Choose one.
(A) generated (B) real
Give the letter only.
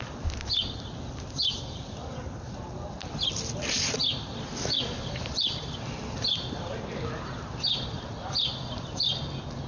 B